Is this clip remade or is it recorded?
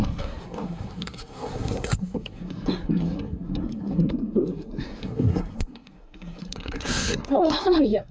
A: remade